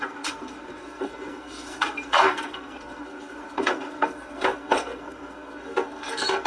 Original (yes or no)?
no